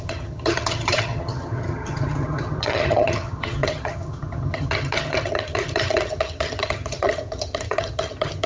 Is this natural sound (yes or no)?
no